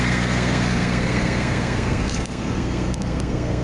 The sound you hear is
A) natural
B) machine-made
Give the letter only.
B